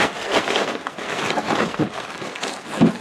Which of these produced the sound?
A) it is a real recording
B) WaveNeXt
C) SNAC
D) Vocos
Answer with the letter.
C